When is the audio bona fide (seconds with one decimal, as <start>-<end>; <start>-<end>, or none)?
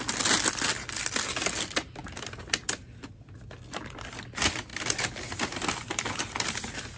0.0-7.0